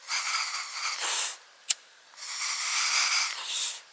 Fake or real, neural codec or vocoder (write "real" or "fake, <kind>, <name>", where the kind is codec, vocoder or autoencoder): real